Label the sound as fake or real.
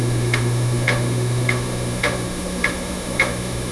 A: fake